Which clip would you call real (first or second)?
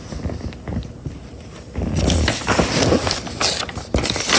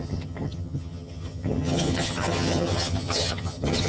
first